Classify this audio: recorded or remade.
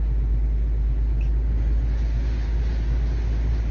recorded